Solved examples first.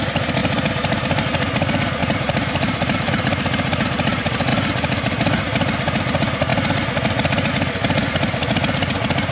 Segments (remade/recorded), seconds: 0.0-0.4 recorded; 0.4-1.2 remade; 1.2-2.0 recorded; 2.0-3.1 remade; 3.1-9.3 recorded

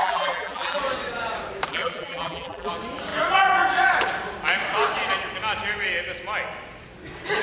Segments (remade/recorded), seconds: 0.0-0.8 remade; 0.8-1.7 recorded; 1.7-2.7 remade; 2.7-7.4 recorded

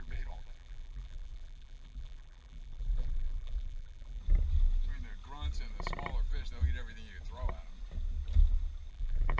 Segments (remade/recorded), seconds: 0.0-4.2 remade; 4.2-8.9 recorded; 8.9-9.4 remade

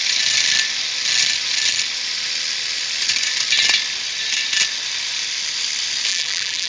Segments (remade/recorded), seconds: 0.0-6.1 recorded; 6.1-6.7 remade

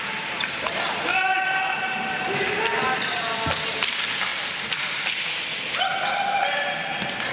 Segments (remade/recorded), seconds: 0.0-2.7 recorded; 2.7-3.4 remade; 3.4-7.3 recorded

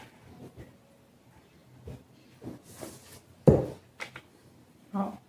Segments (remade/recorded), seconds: 0.0-5.3 recorded